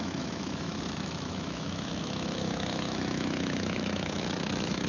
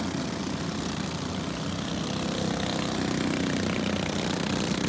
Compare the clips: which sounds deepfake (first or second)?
first